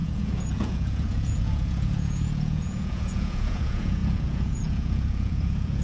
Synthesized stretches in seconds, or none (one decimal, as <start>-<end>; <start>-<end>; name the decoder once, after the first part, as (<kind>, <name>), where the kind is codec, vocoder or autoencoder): 0.0-5.8 (vocoder, Vocos)